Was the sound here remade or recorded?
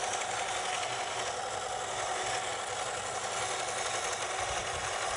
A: recorded